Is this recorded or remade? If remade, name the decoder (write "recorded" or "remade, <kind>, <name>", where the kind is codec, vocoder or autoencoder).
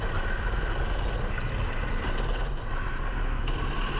recorded